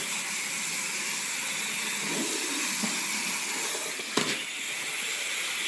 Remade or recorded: recorded